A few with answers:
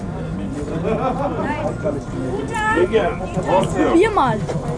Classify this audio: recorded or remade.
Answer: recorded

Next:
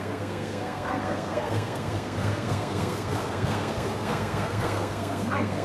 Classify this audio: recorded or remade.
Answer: remade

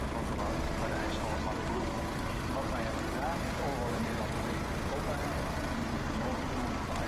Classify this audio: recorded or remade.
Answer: recorded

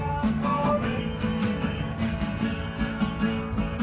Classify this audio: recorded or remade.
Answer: remade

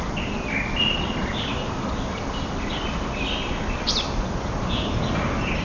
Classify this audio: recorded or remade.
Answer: recorded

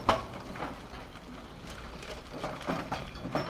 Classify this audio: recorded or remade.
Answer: recorded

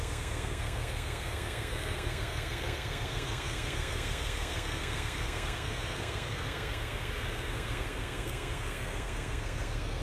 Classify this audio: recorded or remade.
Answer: remade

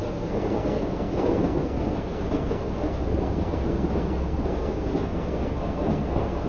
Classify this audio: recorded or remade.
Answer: remade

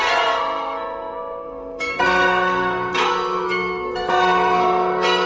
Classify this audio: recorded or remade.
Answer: remade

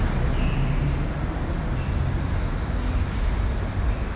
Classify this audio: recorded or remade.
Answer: recorded